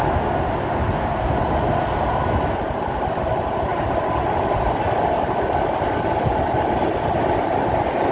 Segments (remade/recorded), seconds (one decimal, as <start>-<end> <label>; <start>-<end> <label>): 0.0-8.1 recorded